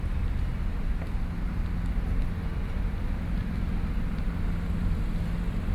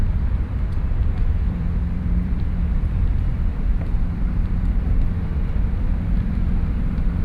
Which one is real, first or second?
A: first